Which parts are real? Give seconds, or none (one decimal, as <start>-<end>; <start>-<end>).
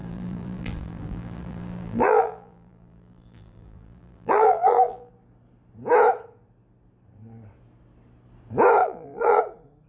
5.1-8.8; 9.4-9.9